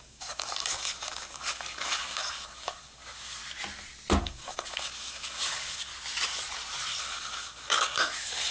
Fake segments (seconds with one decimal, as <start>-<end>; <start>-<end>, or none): 0.0-3.4; 4.2-5.9; 7.0-8.5